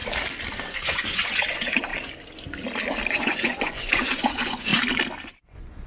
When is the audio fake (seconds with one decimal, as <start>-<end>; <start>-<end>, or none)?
0.7-1.9; 3.1-4.7; 5.5-5.9